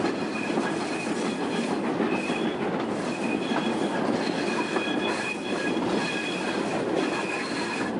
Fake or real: real